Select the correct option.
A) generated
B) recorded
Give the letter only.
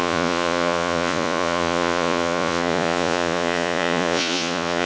A